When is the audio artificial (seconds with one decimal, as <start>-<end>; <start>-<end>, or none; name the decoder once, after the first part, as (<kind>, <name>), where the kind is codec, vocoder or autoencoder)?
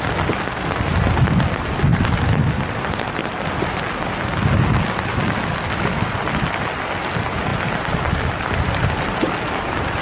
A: 1.9-3.2 (vocoder, BigVGAN v2); 7.5-8.8